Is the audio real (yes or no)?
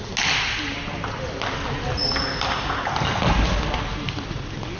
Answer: yes